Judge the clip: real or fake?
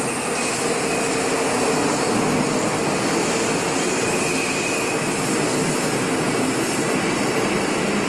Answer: real